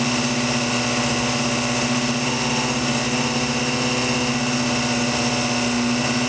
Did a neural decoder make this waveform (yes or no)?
no